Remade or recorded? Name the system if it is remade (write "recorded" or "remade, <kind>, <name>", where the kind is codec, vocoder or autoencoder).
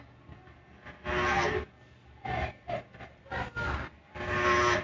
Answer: recorded